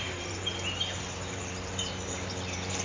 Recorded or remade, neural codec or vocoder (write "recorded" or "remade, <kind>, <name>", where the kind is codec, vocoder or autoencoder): remade, vocoder, BigVGAN v2